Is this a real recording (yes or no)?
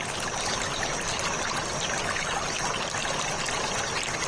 yes